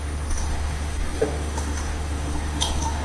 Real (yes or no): no